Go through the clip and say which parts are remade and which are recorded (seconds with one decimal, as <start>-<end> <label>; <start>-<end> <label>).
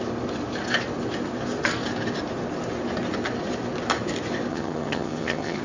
0.0-4.5 recorded; 4.5-5.6 remade